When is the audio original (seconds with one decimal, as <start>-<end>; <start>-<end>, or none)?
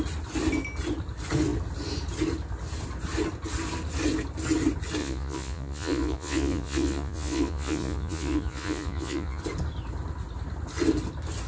0.0-5.0; 9.4-11.5